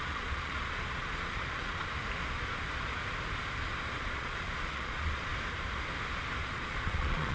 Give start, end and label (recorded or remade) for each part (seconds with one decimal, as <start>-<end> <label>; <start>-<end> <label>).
0.0-1.8 remade; 1.8-4.0 recorded; 4.0-5.3 remade; 5.3-6.4 recorded; 6.4-7.3 remade